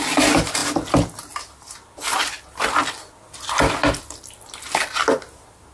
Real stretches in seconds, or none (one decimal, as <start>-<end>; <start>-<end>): 0.0-5.7